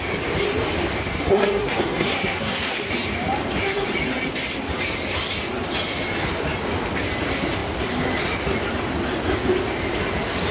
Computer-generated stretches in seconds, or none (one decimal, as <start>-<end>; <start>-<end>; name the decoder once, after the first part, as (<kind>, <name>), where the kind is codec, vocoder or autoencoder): 1.0-2.9 (codec, SNAC)